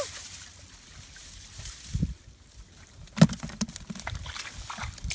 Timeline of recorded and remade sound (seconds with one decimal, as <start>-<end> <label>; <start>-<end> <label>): 0.0-5.1 recorded

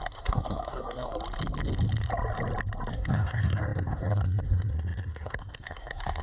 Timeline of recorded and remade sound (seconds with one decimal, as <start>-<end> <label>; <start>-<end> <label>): 0.0-1.1 remade; 1.1-2.9 recorded; 2.9-6.2 remade

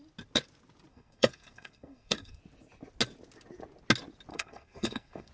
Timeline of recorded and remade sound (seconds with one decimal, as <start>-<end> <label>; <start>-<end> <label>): 0.0-0.9 recorded; 0.9-2.4 remade; 2.4-4.3 recorded; 4.3-5.3 remade

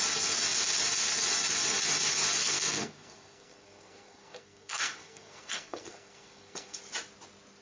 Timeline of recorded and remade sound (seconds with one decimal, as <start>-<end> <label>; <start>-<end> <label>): 0.0-2.4 recorded; 2.4-6.8 remade; 6.8-7.6 recorded

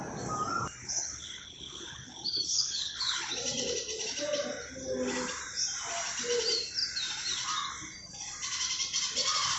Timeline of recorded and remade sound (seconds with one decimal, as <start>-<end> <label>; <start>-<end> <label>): 0.0-0.8 recorded; 0.8-3.3 remade; 3.3-9.6 recorded

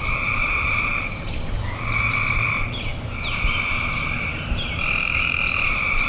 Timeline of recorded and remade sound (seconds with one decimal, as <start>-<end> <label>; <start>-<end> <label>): 0.0-0.9 remade; 0.9-1.5 recorded; 1.5-2.9 remade; 2.9-4.2 recorded; 4.2-6.1 remade